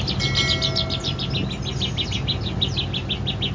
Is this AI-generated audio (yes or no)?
no